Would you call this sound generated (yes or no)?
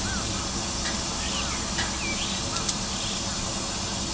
no